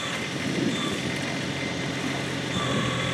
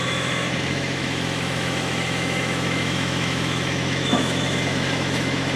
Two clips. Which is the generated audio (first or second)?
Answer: second